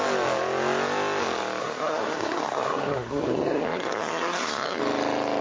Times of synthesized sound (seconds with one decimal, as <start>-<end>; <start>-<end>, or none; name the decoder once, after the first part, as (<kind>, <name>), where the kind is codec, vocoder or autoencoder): 1.6-4.8 (codec, SNAC)